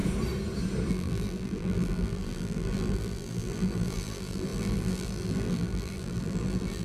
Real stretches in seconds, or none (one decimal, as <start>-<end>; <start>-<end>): 0.0-0.9